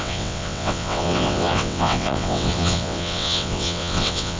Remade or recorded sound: remade